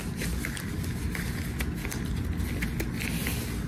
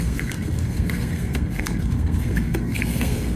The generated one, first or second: second